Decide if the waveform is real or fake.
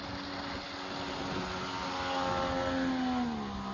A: real